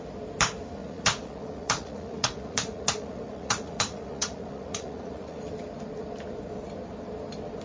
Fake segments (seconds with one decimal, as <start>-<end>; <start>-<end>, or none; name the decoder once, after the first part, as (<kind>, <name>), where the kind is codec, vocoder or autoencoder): 0.8-5.4 (vocoder, Vocos)